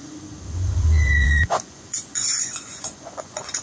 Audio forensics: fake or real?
fake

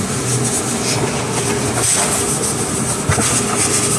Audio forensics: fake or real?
real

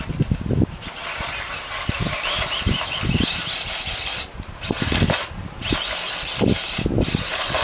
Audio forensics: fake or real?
real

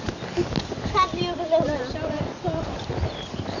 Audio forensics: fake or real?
real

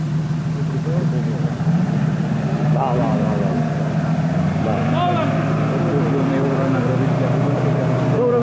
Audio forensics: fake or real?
real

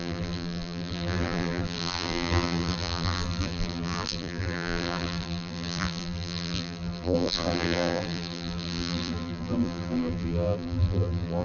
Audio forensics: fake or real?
fake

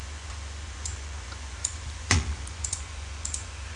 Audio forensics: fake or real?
fake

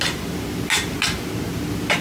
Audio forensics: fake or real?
real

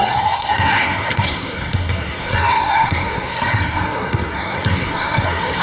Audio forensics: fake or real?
fake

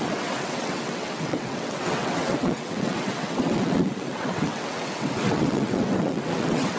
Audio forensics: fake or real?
fake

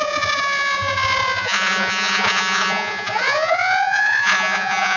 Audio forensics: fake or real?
fake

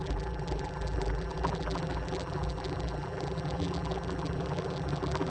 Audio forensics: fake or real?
fake